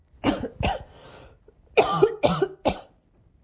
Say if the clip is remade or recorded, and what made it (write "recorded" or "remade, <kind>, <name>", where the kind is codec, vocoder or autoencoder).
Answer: recorded